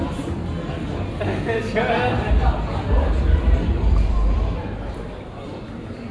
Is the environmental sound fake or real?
real